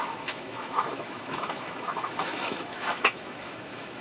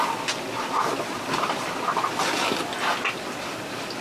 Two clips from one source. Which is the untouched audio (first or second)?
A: second